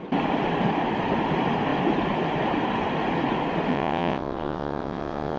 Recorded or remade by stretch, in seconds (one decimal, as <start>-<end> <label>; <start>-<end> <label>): 0.0-3.7 recorded; 3.7-5.4 remade